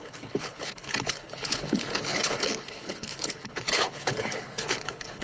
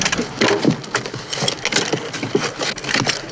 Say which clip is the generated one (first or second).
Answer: first